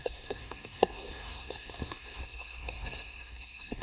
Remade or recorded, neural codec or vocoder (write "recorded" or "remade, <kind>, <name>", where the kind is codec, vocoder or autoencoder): remade, codec, SNAC